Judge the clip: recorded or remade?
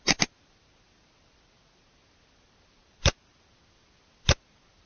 recorded